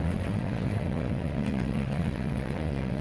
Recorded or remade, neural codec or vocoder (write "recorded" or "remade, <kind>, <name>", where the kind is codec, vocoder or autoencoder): remade, vocoder, WaveNeXt